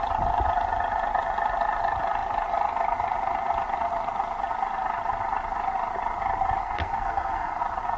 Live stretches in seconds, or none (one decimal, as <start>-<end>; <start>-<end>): 0.0-6.6; 7.6-8.0